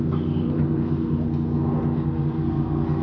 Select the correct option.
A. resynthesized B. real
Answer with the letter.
A